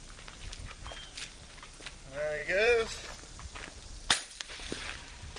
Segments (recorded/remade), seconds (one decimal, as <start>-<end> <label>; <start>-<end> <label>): 0.0-1.3 recorded; 1.3-2.0 remade; 2.0-2.4 recorded; 2.4-5.0 remade; 5.0-5.4 recorded